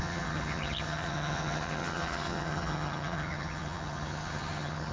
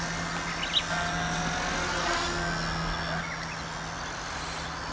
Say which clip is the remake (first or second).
first